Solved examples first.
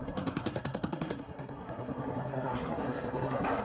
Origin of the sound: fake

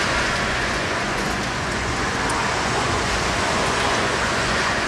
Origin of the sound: fake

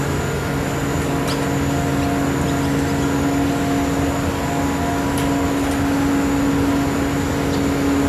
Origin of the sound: real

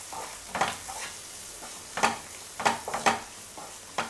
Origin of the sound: real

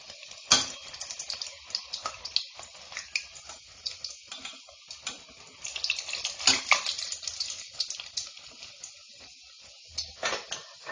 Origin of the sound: real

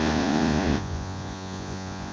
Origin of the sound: fake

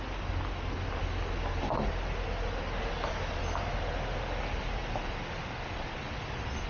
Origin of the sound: real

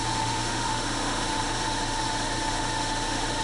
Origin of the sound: fake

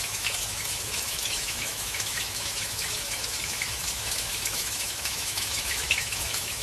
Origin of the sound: fake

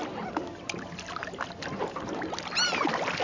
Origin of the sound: real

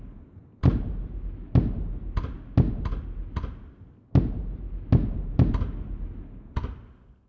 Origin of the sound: real